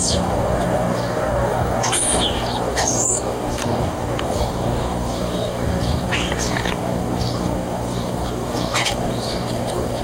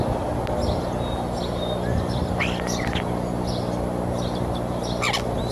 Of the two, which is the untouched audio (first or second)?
second